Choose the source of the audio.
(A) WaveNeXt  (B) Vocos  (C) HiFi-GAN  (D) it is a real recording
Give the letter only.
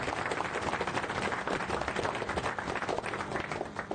D